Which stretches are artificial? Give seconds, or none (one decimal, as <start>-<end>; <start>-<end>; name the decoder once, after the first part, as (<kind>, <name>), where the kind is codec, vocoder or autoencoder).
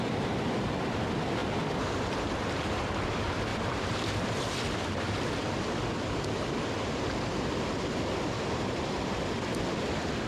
3.5-4.6 (vocoder, BigVGAN v2)